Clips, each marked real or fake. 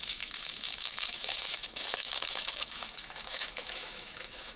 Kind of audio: fake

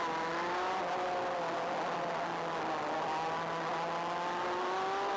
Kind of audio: real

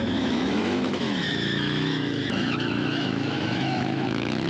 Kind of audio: fake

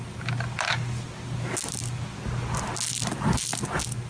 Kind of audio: real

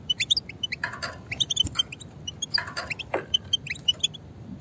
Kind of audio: real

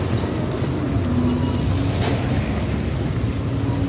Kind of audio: real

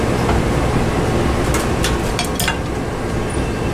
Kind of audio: real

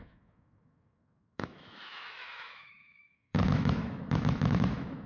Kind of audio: fake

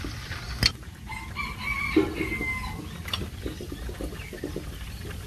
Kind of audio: real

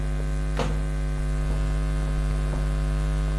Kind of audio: real